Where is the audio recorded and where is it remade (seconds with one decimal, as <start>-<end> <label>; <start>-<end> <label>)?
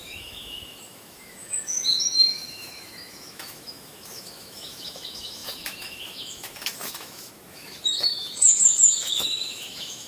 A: 0.0-10.1 remade